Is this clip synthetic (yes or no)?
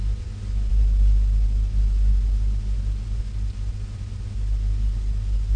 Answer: no